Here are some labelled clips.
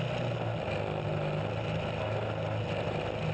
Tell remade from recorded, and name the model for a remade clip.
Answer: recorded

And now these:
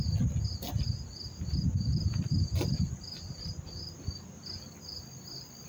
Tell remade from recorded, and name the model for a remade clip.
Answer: recorded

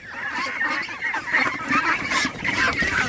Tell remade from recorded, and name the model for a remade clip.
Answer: recorded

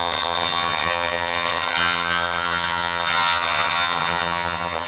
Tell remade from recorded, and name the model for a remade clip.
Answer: remade, vocoder, HiFi-GAN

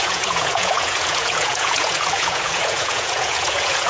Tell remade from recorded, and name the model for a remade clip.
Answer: remade, vocoder, Vocos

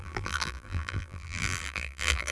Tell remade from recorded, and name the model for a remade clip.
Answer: remade, vocoder, BigVGAN v2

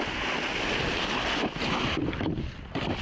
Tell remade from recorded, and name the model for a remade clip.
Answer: recorded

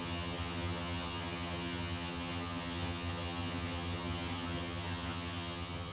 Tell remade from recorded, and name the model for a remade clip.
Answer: remade, vocoder, HiFi-GAN